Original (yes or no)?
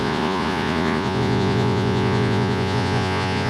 no